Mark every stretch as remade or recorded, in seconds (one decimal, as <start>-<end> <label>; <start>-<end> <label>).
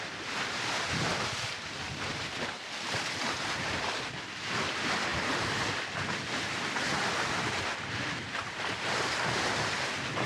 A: 0.0-5.1 recorded; 5.1-5.9 remade; 5.9-10.3 recorded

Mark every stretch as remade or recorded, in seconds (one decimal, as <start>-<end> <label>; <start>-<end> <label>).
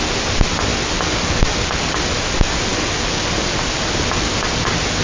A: 0.0-0.7 recorded; 0.7-1.8 remade; 1.8-5.0 recorded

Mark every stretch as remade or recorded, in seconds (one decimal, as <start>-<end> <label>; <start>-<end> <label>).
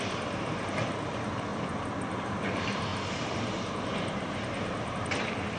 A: 0.0-1.5 remade; 1.5-2.1 recorded; 2.1-5.6 remade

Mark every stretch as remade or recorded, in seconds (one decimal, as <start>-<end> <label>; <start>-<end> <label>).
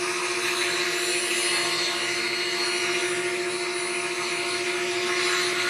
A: 0.0-5.7 recorded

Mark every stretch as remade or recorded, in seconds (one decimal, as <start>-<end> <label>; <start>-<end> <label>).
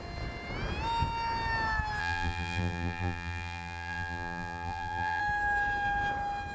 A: 0.0-2.0 recorded; 2.0-5.2 remade; 5.2-6.5 recorded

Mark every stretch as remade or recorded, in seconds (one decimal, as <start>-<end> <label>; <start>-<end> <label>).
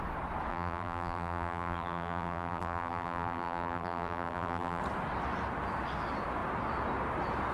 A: 0.0-0.5 recorded; 0.5-4.8 remade; 4.8-7.5 recorded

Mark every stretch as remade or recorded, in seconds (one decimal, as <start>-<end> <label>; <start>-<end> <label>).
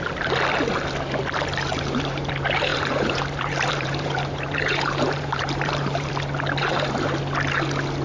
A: 0.0-1.7 recorded; 1.7-2.3 remade; 2.3-2.7 recorded; 2.7-6.1 remade; 6.1-6.7 recorded; 6.7-7.2 remade; 7.2-8.0 recorded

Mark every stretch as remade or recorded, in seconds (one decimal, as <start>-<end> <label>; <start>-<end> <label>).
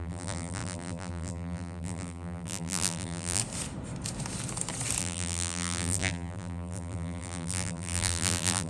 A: 0.0-3.4 remade; 3.4-5.0 recorded; 5.0-8.7 remade